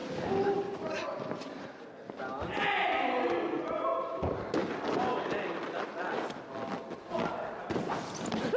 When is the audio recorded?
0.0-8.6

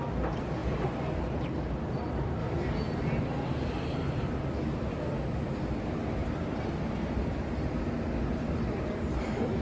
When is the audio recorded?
0.0-0.6; 1.4-2.4; 4.3-6.2; 7.5-9.6

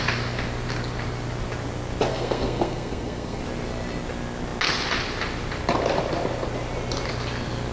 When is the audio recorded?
0.0-2.1; 3.4-7.7